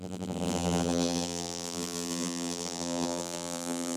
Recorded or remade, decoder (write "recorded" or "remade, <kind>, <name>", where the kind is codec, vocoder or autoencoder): remade, vocoder, BigVGAN v2